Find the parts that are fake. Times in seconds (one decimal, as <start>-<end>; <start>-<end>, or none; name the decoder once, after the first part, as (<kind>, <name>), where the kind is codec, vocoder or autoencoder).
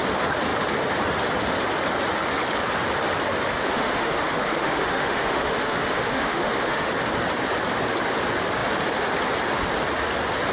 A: 3.6-6.9 (autoencoder, DAC-VAE)